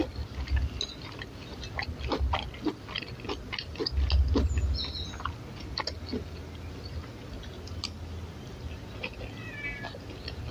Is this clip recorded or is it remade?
recorded